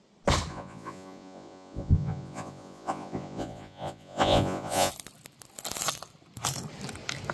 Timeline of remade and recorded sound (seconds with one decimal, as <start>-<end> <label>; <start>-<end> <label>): 0.0-0.5 recorded; 0.5-4.9 remade; 4.9-7.3 recorded